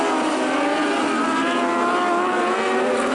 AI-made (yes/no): no